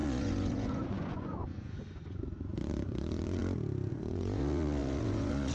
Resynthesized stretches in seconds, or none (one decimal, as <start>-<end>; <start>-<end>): 0.0-3.4; 3.9-5.5